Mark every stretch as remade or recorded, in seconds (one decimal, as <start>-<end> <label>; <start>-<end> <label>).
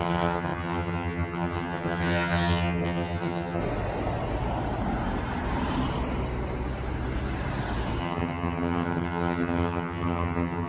0.0-3.6 remade; 3.6-8.0 recorded; 8.0-10.7 remade